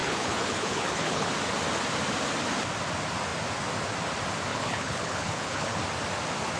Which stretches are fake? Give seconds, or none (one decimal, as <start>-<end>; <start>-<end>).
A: 0.0-1.3; 4.5-5.8